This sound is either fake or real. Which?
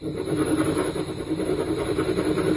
real